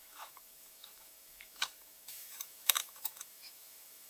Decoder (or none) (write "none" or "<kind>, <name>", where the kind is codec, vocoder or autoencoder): autoencoder, DAC-VAE